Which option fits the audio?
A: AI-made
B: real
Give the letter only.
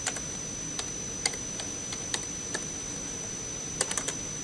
B